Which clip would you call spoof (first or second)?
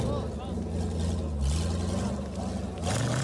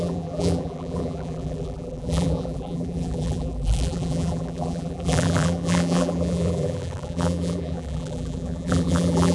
second